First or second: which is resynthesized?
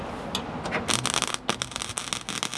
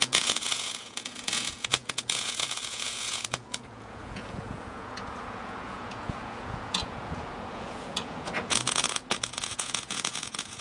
second